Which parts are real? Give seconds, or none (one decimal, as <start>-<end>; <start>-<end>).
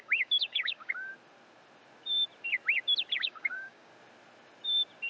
1.1-3.2; 3.9-5.1